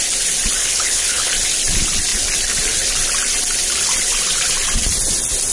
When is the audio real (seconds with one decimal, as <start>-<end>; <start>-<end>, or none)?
0.0-0.6; 1.3-5.5